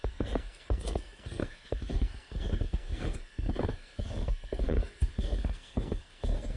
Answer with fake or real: fake